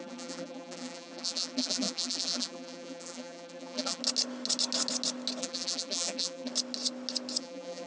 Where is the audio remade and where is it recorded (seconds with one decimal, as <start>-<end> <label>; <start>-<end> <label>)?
0.0-4.0 remade; 4.0-5.4 recorded; 5.4-6.5 remade; 6.5-7.4 recorded; 7.4-7.9 remade